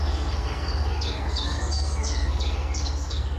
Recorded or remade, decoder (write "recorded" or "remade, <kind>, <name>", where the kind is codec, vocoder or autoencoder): remade, codec, SNAC